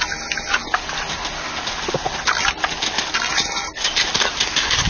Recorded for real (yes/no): yes